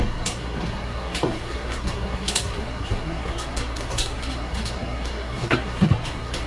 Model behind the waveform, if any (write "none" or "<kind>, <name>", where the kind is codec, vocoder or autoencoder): codec, SNAC